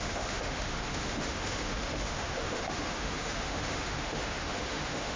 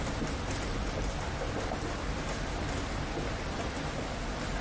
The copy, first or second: first